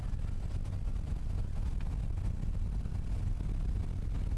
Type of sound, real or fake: real